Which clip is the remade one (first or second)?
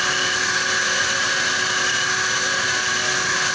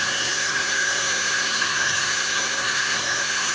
second